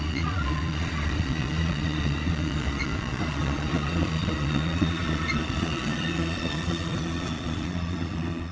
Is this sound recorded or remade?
remade